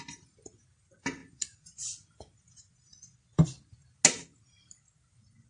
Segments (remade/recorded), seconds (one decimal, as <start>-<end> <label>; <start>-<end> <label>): 0.0-5.5 recorded

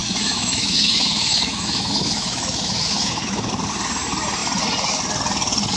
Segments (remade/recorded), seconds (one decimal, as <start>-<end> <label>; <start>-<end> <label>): 0.0-3.5 remade; 3.5-5.8 recorded

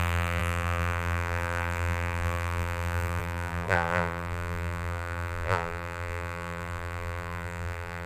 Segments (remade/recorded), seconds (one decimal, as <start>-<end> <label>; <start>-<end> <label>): 0.0-8.1 remade